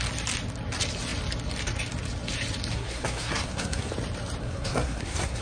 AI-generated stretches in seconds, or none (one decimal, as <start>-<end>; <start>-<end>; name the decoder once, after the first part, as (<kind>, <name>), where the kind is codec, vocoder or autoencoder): 2.7-3.9 (codec, SNAC); 4.4-5.4